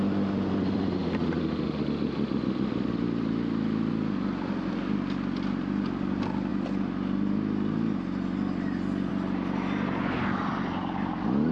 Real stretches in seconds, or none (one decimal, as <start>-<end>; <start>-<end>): 0.0-11.5